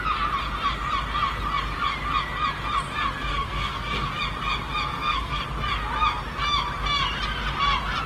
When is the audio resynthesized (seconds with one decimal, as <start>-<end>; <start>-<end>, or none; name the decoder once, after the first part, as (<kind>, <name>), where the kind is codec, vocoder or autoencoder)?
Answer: 3.3-4.1 (codec, SNAC); 4.9-5.4